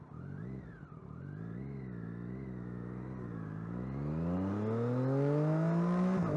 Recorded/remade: recorded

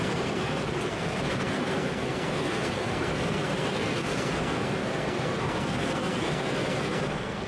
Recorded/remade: remade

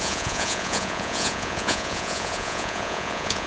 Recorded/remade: remade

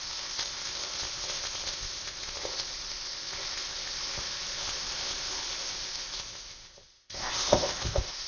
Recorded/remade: remade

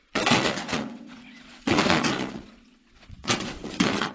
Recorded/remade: remade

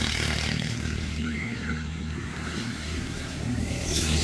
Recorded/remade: remade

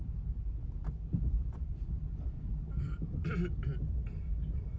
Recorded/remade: remade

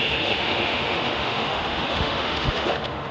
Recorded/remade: remade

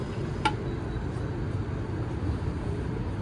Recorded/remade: recorded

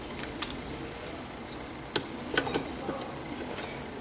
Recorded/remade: recorded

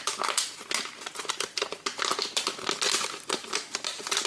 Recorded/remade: recorded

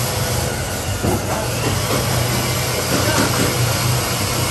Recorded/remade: recorded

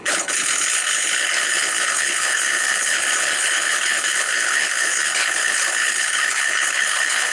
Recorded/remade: remade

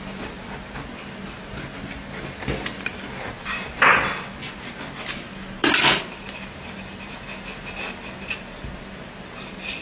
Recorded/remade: recorded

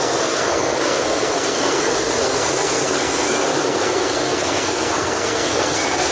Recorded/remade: remade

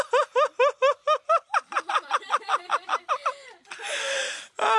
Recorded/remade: recorded